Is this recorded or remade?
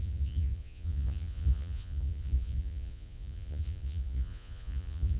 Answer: remade